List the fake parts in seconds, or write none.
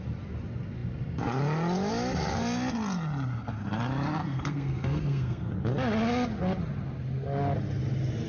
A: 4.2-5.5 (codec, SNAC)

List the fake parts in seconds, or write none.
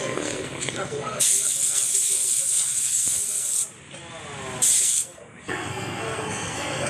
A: 0.0-3.6 (codec, SNAC); 4.8-6.9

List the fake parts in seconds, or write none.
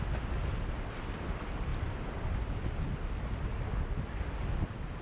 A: none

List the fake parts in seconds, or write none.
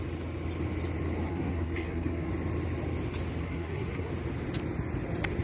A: 1.3-2.3 (codec, SNAC); 3.4-4.1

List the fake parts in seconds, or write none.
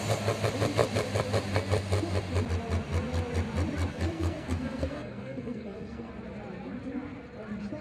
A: 3.9-6.1 (codec, SNAC)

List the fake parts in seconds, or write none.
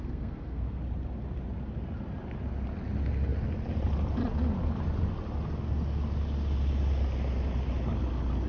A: 0.0-0.8 (codec, SNAC)